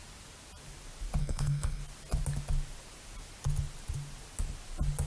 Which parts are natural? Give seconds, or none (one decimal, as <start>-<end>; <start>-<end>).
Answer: 0.0-1.2; 1.8-5.1